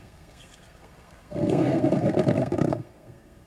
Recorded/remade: remade